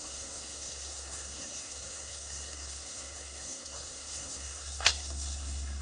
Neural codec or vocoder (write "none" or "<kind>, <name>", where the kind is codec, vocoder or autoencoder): codec, SNAC